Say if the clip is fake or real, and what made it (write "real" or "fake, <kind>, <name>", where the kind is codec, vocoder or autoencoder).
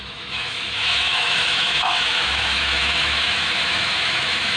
fake, autoencoder, DAC-VAE